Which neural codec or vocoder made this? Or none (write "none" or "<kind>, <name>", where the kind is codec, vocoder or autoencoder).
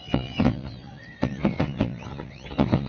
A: vocoder, WaveNeXt